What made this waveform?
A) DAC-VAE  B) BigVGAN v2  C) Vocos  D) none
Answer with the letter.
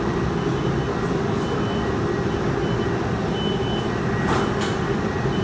D